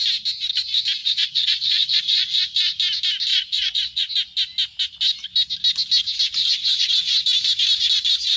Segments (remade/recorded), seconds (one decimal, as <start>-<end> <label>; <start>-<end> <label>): 0.0-1.0 recorded; 1.0-2.4 remade; 2.4-3.3 recorded; 3.3-4.1 remade; 4.1-6.4 recorded; 6.4-7.0 remade; 7.0-8.4 recorded